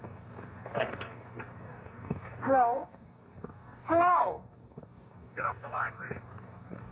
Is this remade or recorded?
remade